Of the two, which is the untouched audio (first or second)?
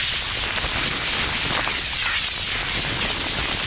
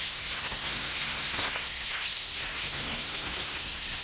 first